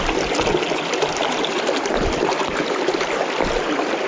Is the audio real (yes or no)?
yes